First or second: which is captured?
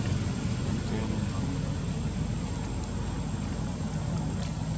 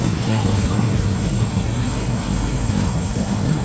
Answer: first